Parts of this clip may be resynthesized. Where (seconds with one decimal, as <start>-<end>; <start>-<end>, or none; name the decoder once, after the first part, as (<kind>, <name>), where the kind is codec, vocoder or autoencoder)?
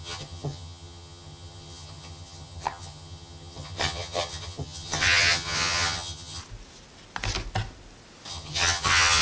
0.0-6.4 (vocoder, HiFi-GAN); 8.3-9.2